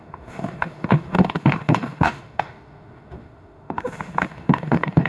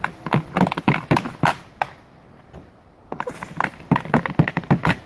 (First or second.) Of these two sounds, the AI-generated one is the first